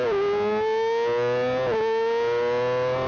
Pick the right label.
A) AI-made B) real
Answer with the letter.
B